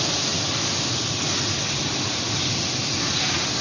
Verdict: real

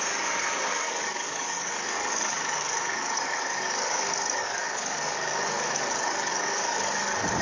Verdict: fake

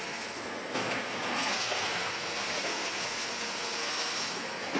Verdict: fake